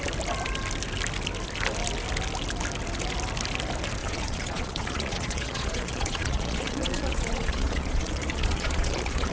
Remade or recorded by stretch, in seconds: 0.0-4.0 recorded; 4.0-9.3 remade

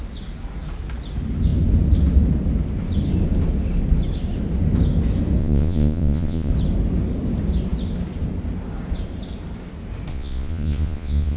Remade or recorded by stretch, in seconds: 0.0-5.4 recorded; 5.4-6.5 remade; 6.5-10.1 recorded; 10.1-11.4 remade

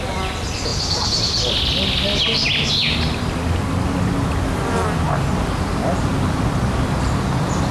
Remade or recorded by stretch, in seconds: 0.0-7.7 recorded

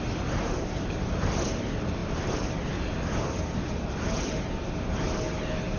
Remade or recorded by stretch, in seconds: 0.0-5.8 recorded

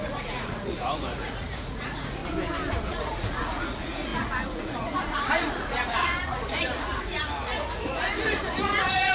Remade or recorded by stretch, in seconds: 0.0-2.2 remade; 2.2-2.9 recorded; 2.9-9.1 remade